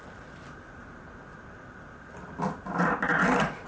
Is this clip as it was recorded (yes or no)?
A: yes